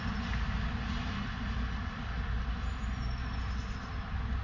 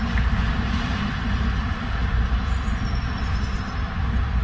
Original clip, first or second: first